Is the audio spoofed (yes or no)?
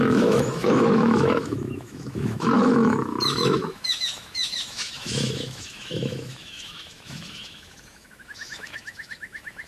yes